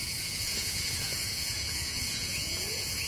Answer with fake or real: fake